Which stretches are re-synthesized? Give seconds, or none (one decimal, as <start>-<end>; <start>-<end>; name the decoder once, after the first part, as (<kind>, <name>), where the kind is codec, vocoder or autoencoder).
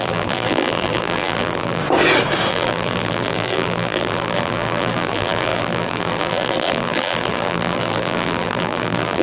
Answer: 0.0-1.8 (vocoder, BigVGAN v2); 2.5-9.2